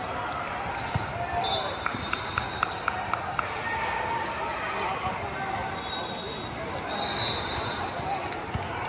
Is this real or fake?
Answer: real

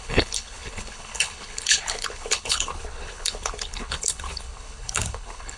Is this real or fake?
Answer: fake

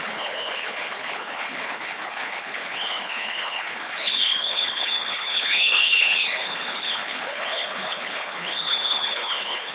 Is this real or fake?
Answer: fake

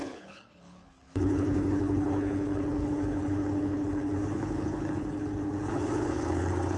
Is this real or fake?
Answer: fake